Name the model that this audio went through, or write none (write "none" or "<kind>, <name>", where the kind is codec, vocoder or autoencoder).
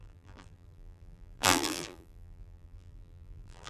vocoder, BigVGAN v2